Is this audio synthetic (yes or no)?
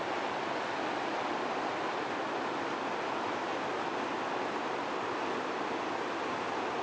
no